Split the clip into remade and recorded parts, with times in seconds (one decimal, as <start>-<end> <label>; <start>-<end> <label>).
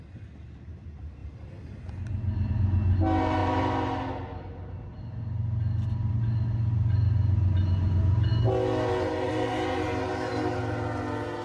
0.0-11.4 recorded